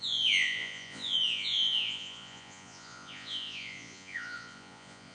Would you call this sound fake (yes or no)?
yes